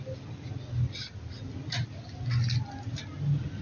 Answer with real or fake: real